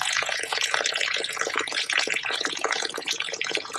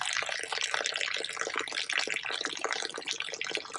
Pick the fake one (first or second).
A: first